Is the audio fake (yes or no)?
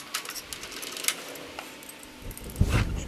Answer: no